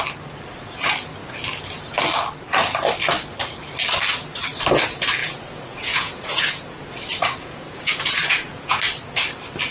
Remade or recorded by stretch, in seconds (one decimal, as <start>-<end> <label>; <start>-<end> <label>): 0.0-5.2 recorded; 5.2-6.9 remade; 6.9-7.4 recorded; 7.4-8.8 remade; 8.8-9.7 recorded